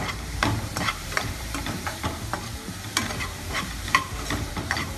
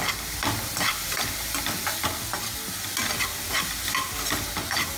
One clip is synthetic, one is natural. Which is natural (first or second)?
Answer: second